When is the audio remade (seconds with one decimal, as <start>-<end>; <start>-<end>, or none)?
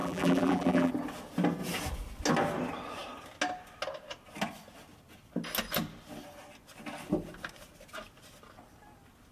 0.0-0.9